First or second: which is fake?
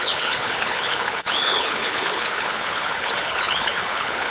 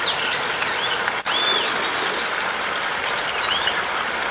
first